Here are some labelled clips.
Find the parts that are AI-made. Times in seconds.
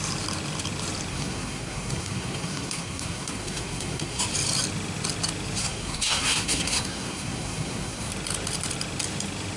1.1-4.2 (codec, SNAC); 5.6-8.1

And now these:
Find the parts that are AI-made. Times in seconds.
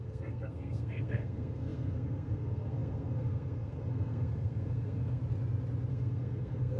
0.0-5.2 (codec, SNAC); 5.9-6.8